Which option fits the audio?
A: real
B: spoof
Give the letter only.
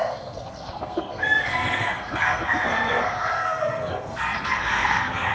B